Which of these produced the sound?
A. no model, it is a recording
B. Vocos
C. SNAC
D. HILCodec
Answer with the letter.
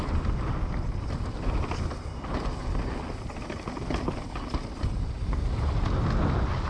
A